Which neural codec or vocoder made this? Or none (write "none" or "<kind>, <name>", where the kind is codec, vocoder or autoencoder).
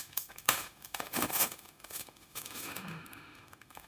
autoencoder, DAC-VAE